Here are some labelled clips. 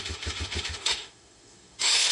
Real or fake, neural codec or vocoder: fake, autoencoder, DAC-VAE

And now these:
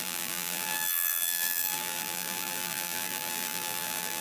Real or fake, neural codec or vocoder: fake, vocoder, BigVGAN v2